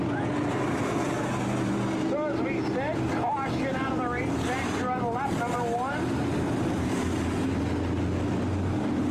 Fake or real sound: real